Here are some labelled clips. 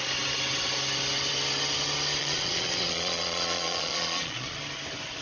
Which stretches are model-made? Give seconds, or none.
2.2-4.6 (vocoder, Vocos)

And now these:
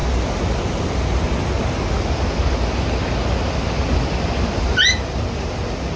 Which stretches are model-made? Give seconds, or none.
none

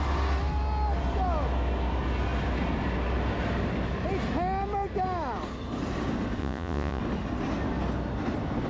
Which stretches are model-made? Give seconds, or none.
6.4-7.0 (vocoder, Vocos)

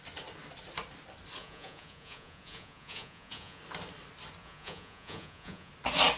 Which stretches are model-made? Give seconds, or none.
1.4-3.6 (vocoder, Vocos); 4.4-5.7

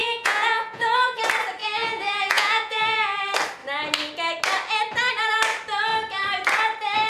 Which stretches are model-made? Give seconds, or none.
0.0-1.2 (vocoder, Vocos); 1.6-3.2